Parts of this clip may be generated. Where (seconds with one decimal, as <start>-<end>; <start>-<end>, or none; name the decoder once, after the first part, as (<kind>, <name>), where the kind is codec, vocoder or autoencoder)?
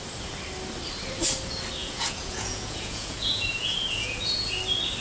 1.8-4.6 (vocoder, Vocos)